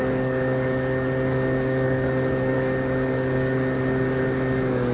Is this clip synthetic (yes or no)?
yes